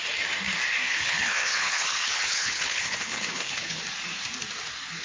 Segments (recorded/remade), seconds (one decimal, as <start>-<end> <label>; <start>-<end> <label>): 0.0-0.8 recorded; 0.8-3.8 remade; 3.8-5.0 recorded